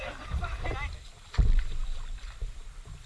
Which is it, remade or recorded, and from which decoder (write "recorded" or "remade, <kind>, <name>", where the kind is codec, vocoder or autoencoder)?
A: recorded